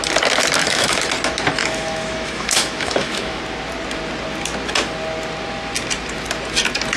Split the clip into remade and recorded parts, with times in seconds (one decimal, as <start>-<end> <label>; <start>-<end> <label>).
0.0-0.6 recorded; 0.6-1.1 remade; 1.1-1.6 recorded; 1.6-3.4 remade; 3.4-7.0 recorded